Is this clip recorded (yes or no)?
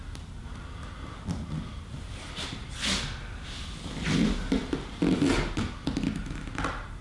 yes